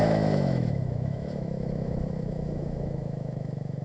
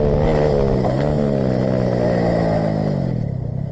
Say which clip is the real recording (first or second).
second